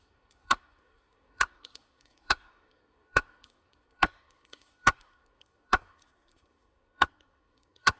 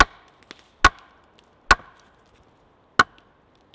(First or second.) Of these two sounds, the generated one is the first